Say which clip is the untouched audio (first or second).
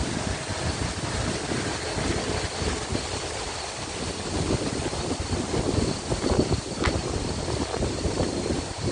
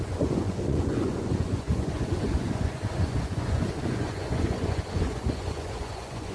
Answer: first